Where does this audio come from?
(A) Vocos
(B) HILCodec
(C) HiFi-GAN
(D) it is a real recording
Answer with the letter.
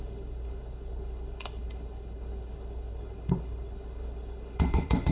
B